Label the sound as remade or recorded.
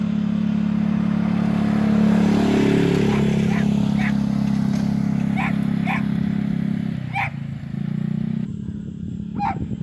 recorded